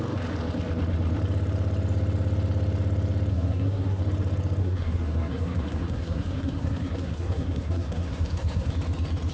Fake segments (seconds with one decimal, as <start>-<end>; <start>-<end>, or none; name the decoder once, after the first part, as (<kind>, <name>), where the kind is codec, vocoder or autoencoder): 3.3-4.0 (codec, SNAC); 4.6-8.7